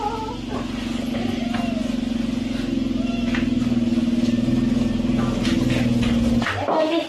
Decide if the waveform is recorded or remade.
recorded